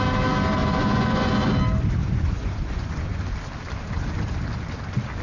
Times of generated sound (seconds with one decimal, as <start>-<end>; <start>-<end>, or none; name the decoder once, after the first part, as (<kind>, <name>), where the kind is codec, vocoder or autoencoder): 0.6-1.5 (vocoder, Vocos); 2.0-3.2